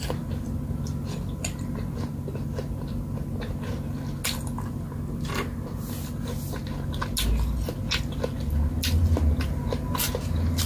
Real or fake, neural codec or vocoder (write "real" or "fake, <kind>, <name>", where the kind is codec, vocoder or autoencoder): real